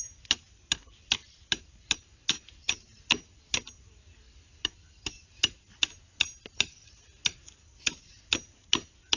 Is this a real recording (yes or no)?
yes